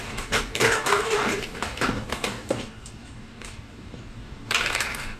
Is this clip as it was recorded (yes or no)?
no